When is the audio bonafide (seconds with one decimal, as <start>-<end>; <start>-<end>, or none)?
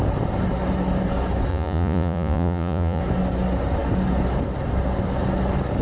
0.0-1.5; 3.0-5.8